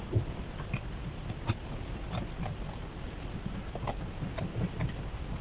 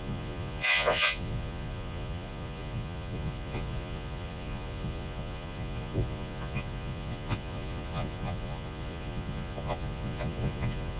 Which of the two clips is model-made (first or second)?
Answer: second